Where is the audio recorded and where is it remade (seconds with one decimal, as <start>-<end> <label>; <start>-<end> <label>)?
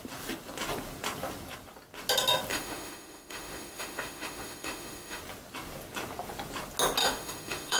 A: 0.0-2.5 recorded; 2.5-5.2 remade; 5.2-7.0 recorded; 7.0-7.8 remade